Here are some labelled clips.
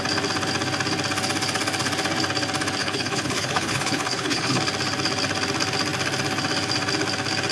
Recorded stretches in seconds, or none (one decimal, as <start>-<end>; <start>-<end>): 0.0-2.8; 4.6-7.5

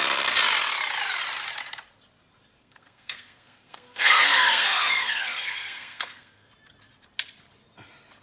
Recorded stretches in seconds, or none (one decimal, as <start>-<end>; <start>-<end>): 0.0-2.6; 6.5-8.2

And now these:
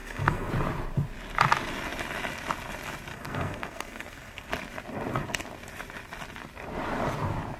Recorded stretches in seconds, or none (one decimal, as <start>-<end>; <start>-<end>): 0.5-3.1; 4.5-7.6

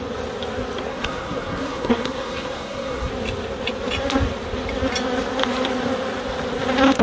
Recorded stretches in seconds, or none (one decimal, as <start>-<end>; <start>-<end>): 0.0-0.9; 3.1-7.0

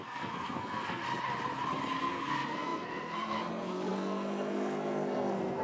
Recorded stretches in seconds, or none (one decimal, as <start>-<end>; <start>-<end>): 1.0-2.0